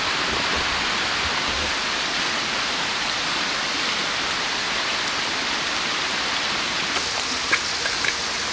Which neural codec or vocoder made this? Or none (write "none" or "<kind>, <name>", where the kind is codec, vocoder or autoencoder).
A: none